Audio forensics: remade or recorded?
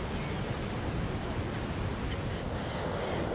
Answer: recorded